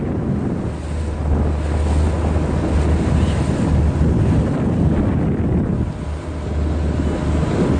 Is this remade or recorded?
recorded